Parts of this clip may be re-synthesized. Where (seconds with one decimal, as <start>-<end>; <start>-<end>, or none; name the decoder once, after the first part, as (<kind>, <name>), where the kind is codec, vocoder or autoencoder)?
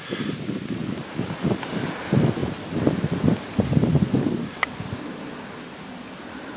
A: none